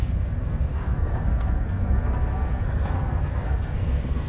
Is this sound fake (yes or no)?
yes